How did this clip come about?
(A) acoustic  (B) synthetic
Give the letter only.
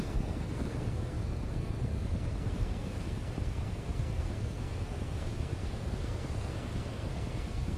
B